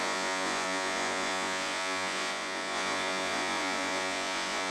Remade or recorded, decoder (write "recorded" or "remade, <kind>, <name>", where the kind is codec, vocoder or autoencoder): remade, vocoder, Vocos